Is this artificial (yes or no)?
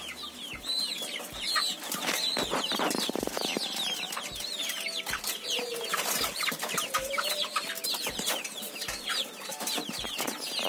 yes